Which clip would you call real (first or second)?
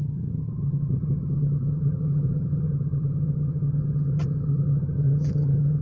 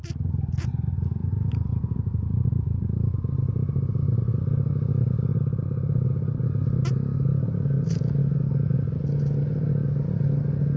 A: second